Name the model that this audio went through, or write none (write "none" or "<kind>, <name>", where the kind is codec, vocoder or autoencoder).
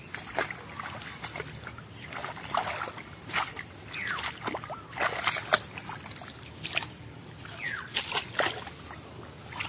none